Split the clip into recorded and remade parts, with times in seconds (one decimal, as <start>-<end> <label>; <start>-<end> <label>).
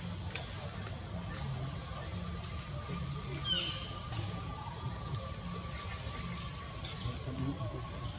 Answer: 0.0-8.2 recorded